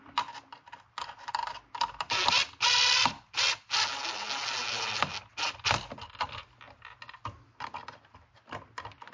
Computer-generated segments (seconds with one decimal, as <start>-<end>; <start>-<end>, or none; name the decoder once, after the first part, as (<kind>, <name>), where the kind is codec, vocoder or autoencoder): none